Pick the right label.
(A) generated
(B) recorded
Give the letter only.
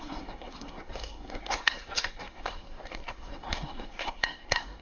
A